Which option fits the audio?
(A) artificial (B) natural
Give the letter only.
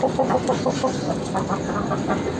B